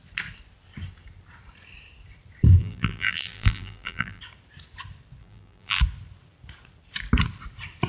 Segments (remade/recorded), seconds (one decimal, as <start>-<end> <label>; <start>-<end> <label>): 0.0-2.6 recorded; 2.6-4.2 remade; 4.2-5.2 recorded; 5.2-5.8 remade; 5.8-7.9 recorded

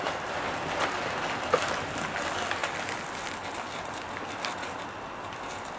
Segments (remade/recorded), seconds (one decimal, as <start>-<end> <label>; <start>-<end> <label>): 0.0-5.8 recorded

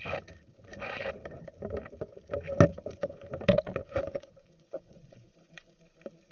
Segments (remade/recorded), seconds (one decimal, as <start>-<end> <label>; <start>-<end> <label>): 0.0-0.4 recorded; 0.4-1.1 remade; 1.1-2.7 recorded; 2.7-3.3 remade; 3.3-3.8 recorded; 3.8-5.8 remade; 5.8-6.3 recorded

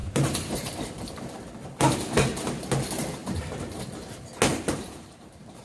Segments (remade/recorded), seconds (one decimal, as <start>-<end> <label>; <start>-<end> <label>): 0.0-0.9 remade; 0.9-3.2 recorded; 3.2-3.8 remade; 3.8-4.5 recorded; 4.5-5.6 remade

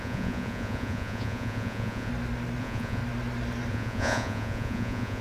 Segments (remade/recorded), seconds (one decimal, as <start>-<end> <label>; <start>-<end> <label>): 0.0-2.1 remade; 2.1-2.6 recorded; 2.6-3.0 remade; 3.0-3.7 recorded; 3.7-5.2 remade

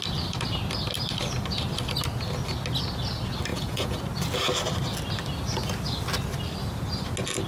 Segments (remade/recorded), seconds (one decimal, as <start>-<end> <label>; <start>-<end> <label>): 0.0-3.5 recorded; 3.5-4.0 remade; 4.0-7.5 recorded